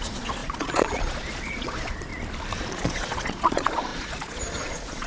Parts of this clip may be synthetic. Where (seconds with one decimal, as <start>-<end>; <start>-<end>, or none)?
0.0-2.1; 2.6-5.1